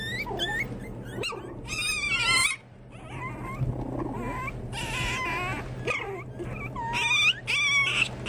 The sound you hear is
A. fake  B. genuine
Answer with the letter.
B